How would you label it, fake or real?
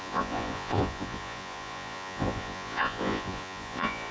fake